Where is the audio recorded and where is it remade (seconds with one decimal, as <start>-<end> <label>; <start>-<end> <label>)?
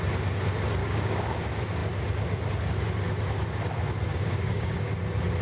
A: 0.0-0.8 recorded; 0.8-1.4 remade; 1.4-4.1 recorded; 4.1-4.9 remade; 4.9-5.4 recorded